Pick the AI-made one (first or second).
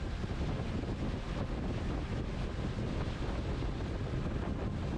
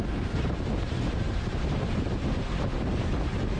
second